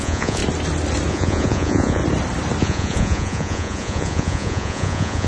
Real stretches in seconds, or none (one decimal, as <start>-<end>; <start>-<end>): 0.4-1.1; 2.0-2.6